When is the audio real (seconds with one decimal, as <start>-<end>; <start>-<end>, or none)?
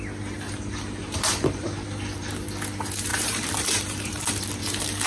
0.0-1.0; 2.2-3.1; 4.6-5.1